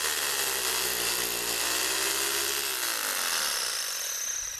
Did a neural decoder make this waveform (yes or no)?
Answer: no